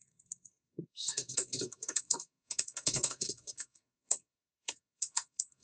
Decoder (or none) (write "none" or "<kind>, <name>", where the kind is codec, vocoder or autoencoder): codec, SNAC